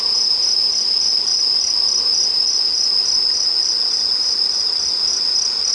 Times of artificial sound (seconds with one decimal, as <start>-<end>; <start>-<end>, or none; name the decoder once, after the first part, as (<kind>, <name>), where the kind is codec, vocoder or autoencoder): 0.0-0.7 (vocoder, Vocos)